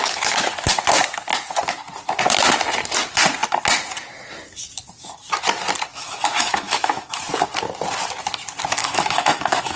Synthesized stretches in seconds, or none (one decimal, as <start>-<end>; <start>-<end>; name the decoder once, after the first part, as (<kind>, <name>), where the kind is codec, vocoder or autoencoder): 5.9-7.2 (autoencoder, DAC-VAE); 8.8-9.8